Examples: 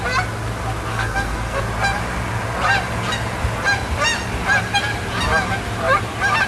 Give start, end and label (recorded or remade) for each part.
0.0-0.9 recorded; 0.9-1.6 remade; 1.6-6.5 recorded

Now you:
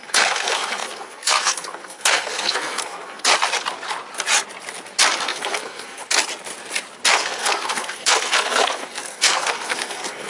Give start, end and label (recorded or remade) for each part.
0.0-3.3 remade; 3.3-5.2 recorded; 5.2-6.0 remade; 6.0-7.1 recorded; 7.1-10.3 remade

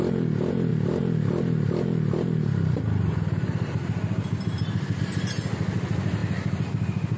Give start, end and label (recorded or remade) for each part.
0.0-7.2 recorded

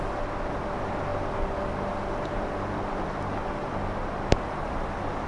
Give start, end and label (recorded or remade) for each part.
0.0-5.3 recorded

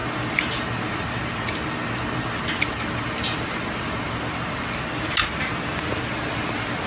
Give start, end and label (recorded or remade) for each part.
0.0-6.9 recorded

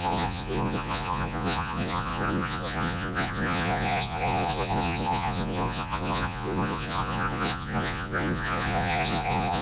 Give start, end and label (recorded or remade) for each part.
0.0-9.6 remade